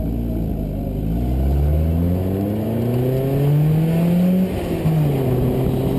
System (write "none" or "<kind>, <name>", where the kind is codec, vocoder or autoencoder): none